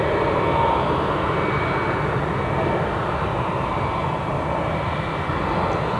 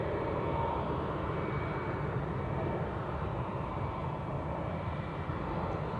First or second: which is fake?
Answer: second